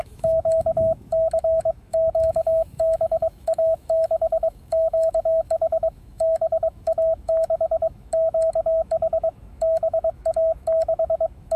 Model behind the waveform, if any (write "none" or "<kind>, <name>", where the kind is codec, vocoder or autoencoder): autoencoder, DAC-VAE